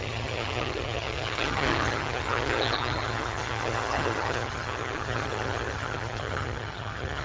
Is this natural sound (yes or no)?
no